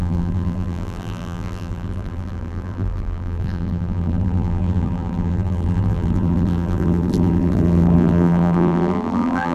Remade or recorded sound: remade